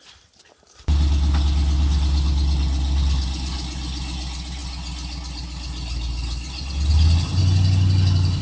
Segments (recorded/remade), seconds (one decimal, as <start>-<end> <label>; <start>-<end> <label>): 0.0-8.4 recorded